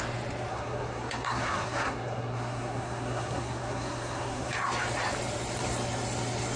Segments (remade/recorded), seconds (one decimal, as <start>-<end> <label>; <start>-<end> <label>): 0.0-0.5 recorded; 0.5-4.5 remade; 4.5-6.6 recorded